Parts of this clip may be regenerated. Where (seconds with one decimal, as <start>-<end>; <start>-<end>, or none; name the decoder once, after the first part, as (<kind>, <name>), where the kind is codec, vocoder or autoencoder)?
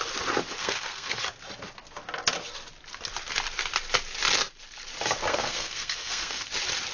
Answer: 0.6-1.2 (codec, SNAC); 5.3-6.5